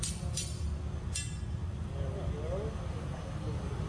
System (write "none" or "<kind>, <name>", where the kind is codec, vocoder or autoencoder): none